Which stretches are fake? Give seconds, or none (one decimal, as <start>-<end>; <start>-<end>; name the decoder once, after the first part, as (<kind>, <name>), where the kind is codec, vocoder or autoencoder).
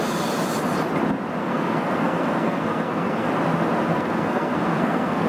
1.4-3.3 (codec, SNAC); 3.9-5.3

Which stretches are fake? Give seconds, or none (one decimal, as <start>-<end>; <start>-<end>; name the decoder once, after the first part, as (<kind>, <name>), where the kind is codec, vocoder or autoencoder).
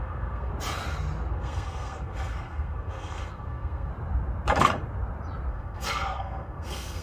0.0-0.5 (codec, SNAC); 1.3-3.9; 5.5-7.0